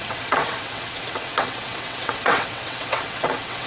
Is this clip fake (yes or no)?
yes